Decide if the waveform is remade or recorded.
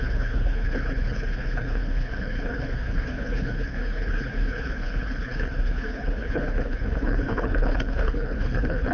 remade